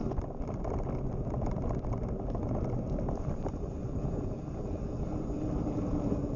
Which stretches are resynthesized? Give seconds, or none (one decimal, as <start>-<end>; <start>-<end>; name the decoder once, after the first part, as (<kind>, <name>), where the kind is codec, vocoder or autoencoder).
none

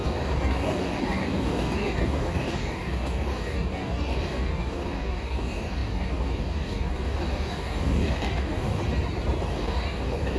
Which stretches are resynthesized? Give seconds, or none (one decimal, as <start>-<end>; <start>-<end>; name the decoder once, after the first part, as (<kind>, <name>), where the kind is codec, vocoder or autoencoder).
0.0-8.8 (codec, DAC); 9.5-10.4

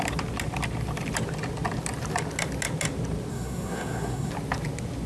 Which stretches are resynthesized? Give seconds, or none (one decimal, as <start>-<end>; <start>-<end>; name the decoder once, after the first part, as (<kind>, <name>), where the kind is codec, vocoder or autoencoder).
3.3-4.3 (codec, SNAC)

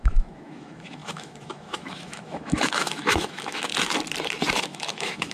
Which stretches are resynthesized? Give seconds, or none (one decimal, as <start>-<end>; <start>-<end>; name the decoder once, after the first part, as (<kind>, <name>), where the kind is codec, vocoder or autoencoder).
0.0-3.7 (autoencoder, DAC-VAE); 4.6-5.3

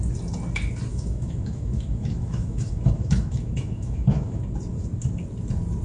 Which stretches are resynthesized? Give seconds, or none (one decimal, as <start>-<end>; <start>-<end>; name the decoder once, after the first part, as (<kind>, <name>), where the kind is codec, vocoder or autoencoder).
0.9-4.4 (autoencoder, DAC-VAE)